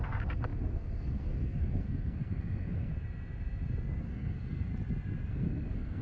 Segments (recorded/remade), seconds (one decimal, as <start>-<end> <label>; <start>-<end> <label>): 0.0-2.9 remade; 2.9-4.0 recorded; 4.0-4.7 remade; 4.7-5.3 recorded; 5.3-6.0 remade